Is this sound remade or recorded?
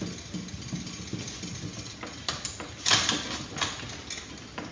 recorded